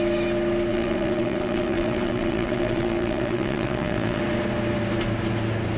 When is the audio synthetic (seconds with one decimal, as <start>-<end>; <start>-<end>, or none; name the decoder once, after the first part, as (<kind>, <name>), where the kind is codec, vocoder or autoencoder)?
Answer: 0.7-4.2 (vocoder, WaveNeXt)